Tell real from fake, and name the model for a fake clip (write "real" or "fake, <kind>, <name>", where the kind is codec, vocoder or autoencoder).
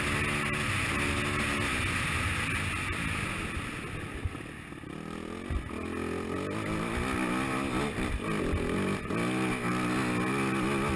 real